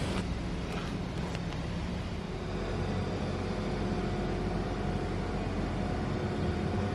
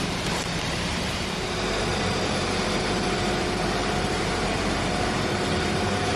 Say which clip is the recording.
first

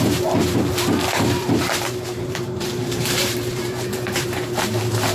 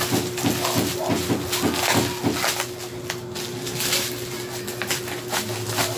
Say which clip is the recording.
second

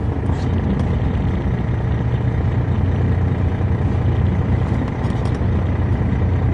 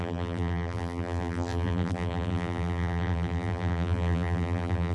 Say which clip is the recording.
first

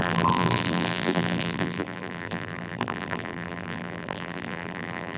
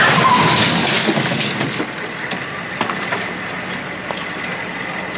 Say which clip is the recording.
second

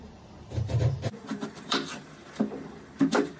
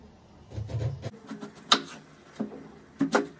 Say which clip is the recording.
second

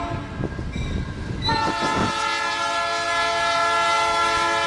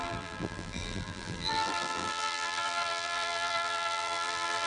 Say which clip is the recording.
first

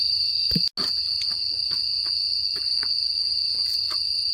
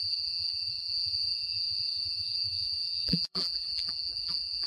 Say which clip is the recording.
first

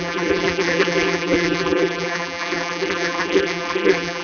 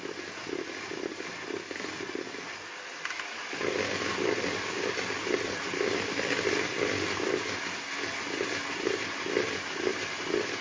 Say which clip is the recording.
second